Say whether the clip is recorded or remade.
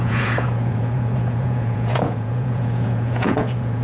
remade